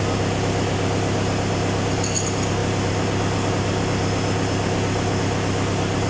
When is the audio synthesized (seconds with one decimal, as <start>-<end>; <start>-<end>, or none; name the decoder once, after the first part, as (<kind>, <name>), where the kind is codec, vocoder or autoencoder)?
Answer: none